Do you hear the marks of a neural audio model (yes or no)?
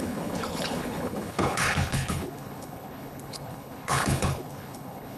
yes